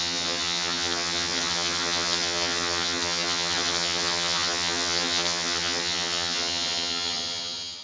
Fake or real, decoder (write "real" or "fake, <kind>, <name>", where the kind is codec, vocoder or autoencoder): fake, vocoder, HiFi-GAN